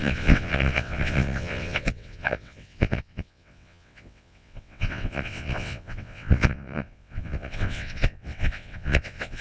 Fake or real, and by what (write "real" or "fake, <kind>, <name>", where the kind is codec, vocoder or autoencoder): fake, vocoder, WaveNeXt